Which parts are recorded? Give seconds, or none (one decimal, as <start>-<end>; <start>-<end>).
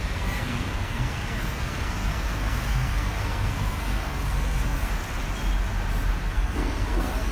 5.0-6.2